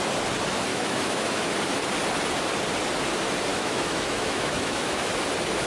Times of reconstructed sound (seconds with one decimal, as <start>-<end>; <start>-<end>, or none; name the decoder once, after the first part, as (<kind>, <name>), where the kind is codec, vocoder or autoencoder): 0.7-1.5 (autoencoder, DAC-VAE); 3.5-5.1

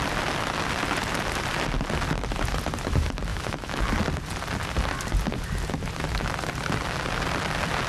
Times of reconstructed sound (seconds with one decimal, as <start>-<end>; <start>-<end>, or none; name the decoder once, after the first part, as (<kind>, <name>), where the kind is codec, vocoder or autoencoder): 3.3-3.8 (autoencoder, DAC-VAE)

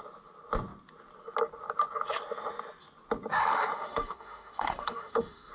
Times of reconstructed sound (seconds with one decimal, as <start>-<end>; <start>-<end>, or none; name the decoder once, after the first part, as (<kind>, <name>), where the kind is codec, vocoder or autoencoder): 3.5-5.5 (autoencoder, DAC-VAE)

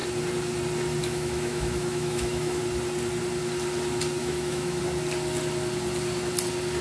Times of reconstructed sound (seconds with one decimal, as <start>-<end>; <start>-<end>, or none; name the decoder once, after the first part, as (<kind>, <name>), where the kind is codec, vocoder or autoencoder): 1.0-2.6 (autoencoder, DAC-VAE); 4.2-4.8

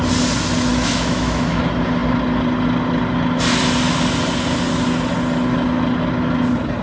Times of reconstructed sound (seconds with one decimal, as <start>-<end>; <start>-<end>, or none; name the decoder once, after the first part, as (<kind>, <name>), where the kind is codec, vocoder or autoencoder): 0.7-1.6 (autoencoder, DAC-VAE)

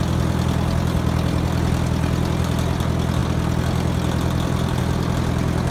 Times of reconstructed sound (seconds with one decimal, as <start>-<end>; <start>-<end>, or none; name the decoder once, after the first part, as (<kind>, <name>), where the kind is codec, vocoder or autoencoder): none

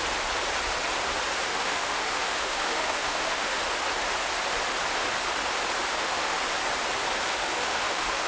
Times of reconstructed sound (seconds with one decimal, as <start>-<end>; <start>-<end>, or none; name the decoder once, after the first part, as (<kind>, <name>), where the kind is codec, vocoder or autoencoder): 1.5-3.6 (autoencoder, DAC-VAE); 5.9-6.4; 7.3-8.3

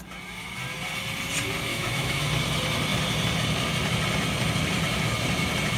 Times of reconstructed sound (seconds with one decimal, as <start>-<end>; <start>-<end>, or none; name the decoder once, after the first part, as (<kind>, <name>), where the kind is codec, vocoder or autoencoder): 1.7-2.3 (autoencoder, DAC-VAE)